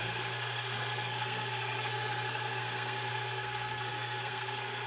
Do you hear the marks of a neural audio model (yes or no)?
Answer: yes